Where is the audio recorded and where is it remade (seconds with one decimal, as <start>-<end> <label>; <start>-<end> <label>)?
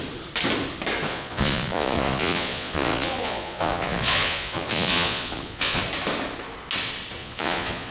0.0-1.1 recorded; 1.1-5.8 remade; 5.8-7.2 recorded; 7.2-7.9 remade